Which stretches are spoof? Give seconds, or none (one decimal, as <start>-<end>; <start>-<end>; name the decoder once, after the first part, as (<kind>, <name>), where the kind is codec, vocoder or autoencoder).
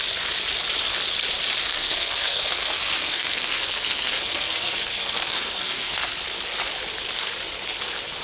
1.6-6.0 (codec, SNAC)